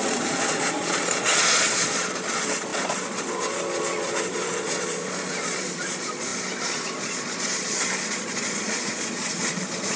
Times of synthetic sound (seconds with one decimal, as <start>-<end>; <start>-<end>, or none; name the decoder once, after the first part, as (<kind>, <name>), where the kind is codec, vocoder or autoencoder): 0.0-10.0 (vocoder, Vocos)